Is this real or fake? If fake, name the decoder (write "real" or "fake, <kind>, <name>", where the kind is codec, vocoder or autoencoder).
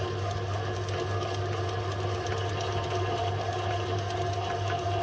real